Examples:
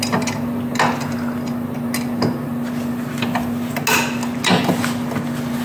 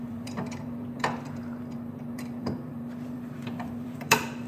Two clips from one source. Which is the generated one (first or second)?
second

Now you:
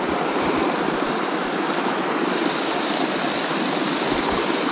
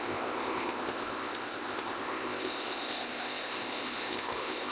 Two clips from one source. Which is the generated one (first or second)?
second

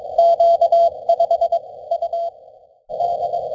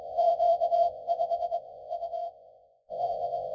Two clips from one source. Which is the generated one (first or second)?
second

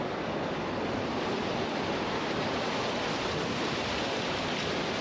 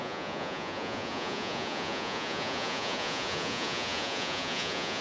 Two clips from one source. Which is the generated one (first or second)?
second